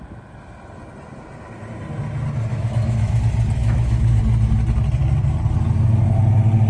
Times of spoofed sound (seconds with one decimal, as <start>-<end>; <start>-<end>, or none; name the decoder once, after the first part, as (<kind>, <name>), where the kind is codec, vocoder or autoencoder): 2.5-3.2 (autoencoder, DAC-VAE); 3.6-4.2